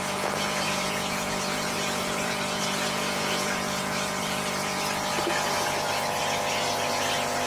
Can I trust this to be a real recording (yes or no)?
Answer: no